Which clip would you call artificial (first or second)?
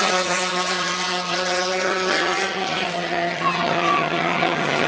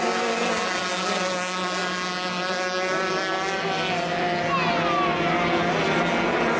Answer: first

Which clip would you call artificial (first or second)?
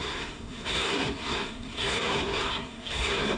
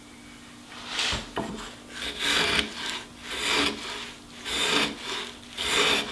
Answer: first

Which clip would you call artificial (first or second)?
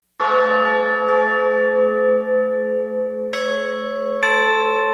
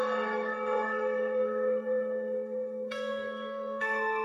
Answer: second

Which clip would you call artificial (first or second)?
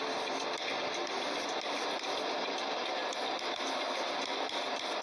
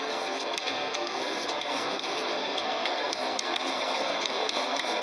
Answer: second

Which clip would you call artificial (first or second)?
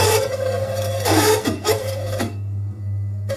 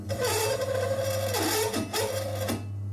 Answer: first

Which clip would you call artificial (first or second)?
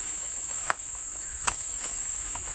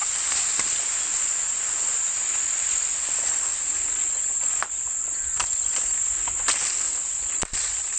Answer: first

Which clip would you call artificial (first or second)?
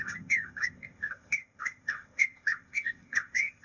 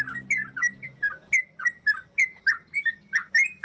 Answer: first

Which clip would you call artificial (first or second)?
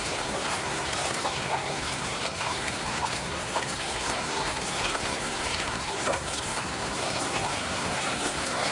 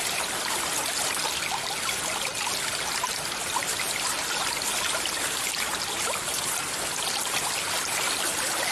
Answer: first